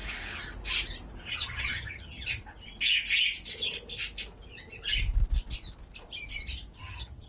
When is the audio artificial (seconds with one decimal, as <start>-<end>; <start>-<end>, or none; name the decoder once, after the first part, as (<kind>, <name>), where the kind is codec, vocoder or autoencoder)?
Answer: 1.3-2.4 (vocoder, HiFi-GAN); 6.8-7.3